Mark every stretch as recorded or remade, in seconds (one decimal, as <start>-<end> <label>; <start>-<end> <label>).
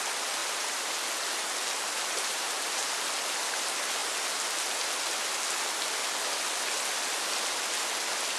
0.0-0.4 recorded; 0.4-0.9 remade; 0.9-2.3 recorded; 2.3-2.8 remade; 2.8-8.4 recorded